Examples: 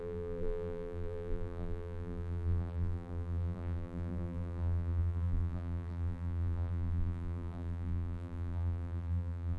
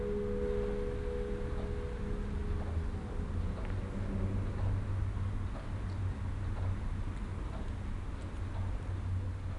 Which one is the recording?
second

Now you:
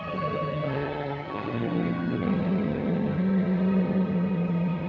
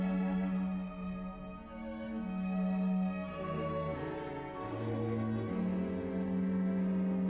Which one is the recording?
second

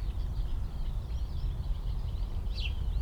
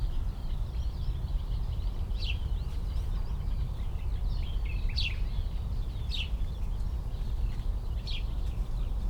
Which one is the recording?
first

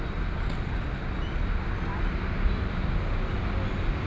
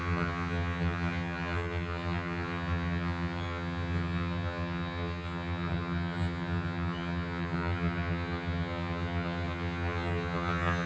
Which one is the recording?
first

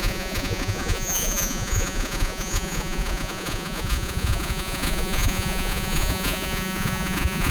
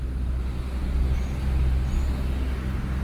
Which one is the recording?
second